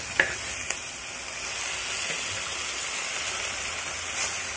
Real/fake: real